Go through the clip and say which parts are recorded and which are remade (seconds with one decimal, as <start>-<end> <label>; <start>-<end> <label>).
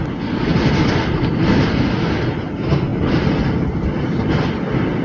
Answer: 0.0-0.5 recorded; 0.5-1.5 remade; 1.5-5.0 recorded